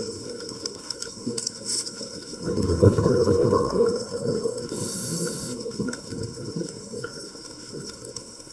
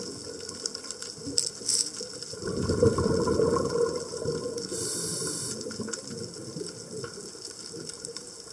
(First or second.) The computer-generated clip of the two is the first